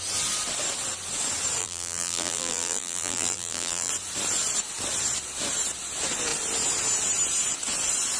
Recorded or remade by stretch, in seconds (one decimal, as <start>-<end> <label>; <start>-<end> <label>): 0.0-1.6 recorded; 1.6-3.9 remade; 3.9-8.2 recorded